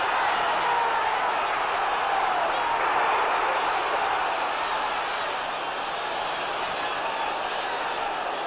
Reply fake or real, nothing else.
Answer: real